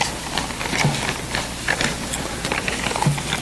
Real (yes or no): yes